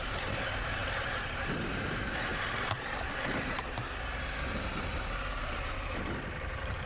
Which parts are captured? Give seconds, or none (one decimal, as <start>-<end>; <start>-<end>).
none